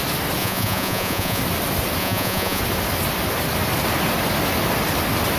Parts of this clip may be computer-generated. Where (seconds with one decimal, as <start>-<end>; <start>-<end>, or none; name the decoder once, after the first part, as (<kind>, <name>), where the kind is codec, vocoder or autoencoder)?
0.4-1.4 (vocoder, Vocos); 2.0-2.6

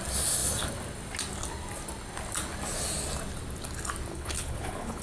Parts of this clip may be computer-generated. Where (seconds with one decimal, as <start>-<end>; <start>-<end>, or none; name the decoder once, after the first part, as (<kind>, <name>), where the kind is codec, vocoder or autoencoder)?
4.1-5.0 (codec, HILCodec)

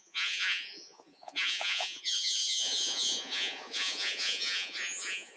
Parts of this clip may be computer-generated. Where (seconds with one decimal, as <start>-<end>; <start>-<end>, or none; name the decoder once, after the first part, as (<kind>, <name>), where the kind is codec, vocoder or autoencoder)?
0.0-5.4 (vocoder, Vocos)

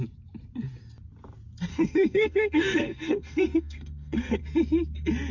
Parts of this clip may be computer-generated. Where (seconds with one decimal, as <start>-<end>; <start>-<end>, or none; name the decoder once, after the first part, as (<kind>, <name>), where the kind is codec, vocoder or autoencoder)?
1.7-4.4 (codec, SNAC)

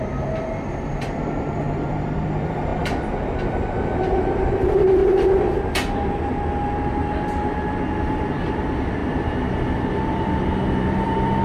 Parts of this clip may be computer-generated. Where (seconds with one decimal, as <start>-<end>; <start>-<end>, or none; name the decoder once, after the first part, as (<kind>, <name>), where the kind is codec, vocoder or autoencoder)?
0.0-2.7 (vocoder, BigVGAN v2); 4.0-5.0; 8.0-11.4